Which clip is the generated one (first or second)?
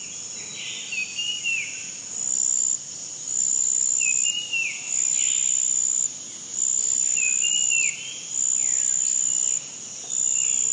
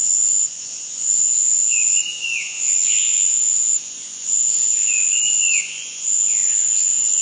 second